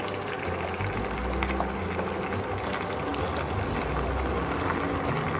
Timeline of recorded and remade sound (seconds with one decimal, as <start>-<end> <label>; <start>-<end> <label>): 0.0-5.4 recorded